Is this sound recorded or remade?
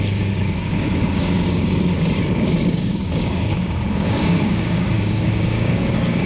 remade